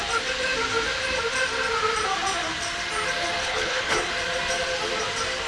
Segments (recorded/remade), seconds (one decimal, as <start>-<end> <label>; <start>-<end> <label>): 0.0-3.4 recorded; 3.4-4.1 remade; 4.1-5.5 recorded